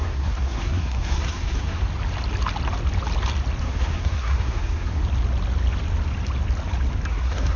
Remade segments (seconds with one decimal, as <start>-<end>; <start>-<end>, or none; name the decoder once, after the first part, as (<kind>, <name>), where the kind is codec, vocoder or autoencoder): 0.0-1.8 (codec, SNAC); 3.6-5.0; 7.1-7.6